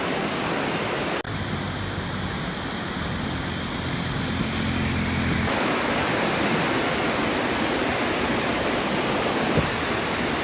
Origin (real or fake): real